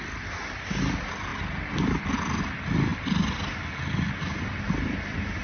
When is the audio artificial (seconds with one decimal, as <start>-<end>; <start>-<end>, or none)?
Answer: none